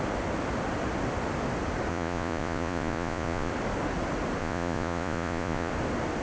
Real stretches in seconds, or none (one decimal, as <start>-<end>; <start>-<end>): 0.0-1.9; 3.5-4.4; 5.7-6.2